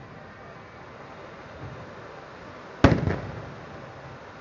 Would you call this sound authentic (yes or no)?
yes